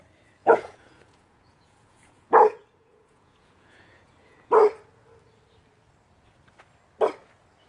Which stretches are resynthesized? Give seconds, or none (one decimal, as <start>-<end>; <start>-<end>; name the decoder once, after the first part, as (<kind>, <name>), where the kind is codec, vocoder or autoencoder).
0.4-4.5 (vocoder, Vocos)